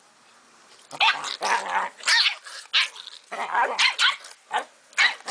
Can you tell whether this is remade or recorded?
recorded